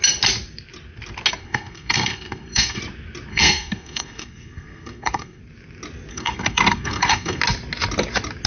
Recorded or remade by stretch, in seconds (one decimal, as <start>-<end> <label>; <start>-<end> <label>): 0.0-1.4 recorded; 1.4-2.8 remade; 2.8-3.3 recorded; 3.3-5.4 remade; 5.4-6.1 recorded; 6.1-7.4 remade; 7.4-8.5 recorded